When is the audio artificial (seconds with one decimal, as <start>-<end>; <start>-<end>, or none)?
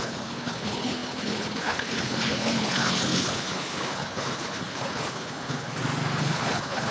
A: 0.0-5.7; 6.2-6.9